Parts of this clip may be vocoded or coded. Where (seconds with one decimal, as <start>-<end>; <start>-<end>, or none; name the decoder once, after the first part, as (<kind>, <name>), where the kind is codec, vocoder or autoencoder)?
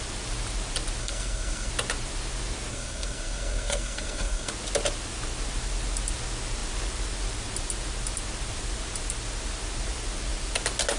1.0-1.7 (codec, SNAC); 2.7-4.5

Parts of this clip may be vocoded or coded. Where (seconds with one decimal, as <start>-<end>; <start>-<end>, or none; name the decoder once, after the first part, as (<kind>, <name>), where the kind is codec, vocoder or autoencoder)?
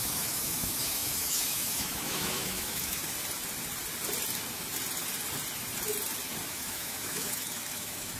0.0-3.0 (autoencoder, DAC-VAE); 6.5-8.2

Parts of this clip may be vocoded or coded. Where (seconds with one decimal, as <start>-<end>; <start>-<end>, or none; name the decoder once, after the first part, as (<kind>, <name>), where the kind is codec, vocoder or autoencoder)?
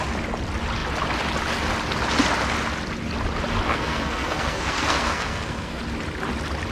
3.7-5.8 (codec, SNAC)